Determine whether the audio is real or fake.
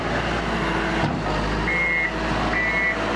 real